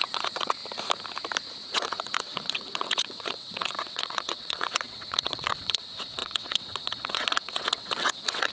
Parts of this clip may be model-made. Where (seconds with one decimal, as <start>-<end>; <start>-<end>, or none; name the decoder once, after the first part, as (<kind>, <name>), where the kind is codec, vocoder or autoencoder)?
0.0-0.6 (vocoder, WaveNeXt); 1.6-8.5